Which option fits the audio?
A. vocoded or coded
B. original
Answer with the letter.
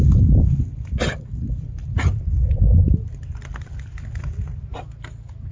B